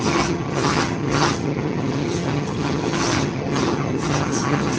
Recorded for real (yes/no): no